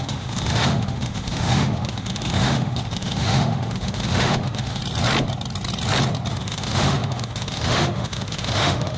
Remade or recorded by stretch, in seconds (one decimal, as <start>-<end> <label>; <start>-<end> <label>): 0.0-4.8 remade; 4.8-6.3 recorded; 6.3-9.0 remade